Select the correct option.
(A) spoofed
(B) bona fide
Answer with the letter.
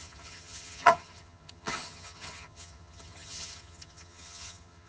A